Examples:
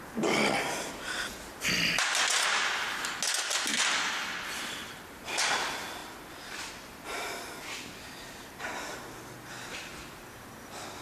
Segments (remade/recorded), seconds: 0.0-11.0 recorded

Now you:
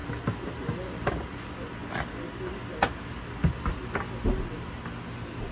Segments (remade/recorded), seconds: 0.0-5.5 recorded